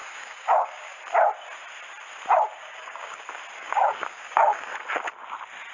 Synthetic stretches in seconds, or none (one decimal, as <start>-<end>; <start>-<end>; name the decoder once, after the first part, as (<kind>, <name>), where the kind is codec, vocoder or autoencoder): 0.0-1.0 (codec, DAC); 2.6-3.2; 3.6-4.7